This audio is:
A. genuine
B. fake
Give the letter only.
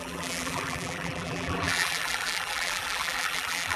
B